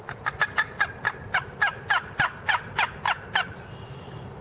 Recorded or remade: recorded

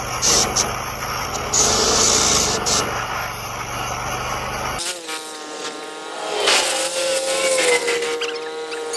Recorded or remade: recorded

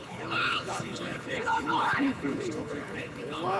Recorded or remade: remade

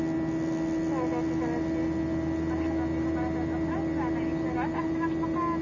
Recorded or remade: recorded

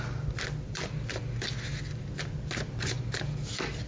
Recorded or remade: recorded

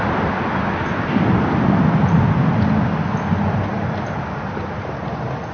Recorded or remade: recorded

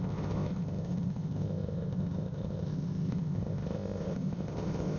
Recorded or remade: remade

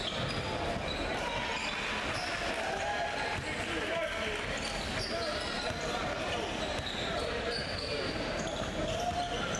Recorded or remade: recorded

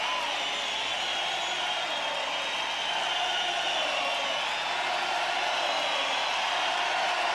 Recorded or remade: recorded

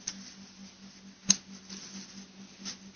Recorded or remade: recorded